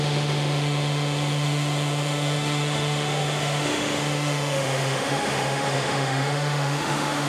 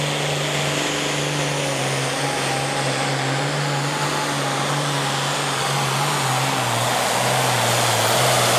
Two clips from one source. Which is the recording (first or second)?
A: second